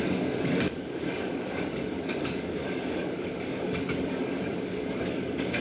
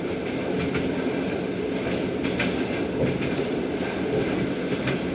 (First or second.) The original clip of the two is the second